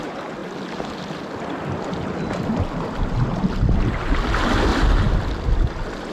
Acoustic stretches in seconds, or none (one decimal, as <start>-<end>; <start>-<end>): 0.0-4.7